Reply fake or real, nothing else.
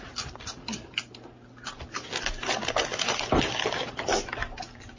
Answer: real